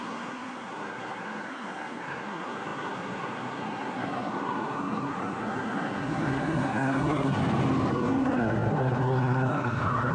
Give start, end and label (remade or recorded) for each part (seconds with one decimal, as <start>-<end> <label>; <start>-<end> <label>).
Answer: 0.0-7.4 remade; 7.4-7.9 recorded; 7.9-10.1 remade